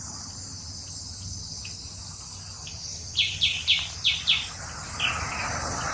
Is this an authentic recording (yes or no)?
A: yes